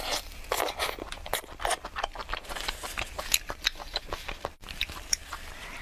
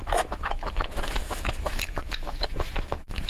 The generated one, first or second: second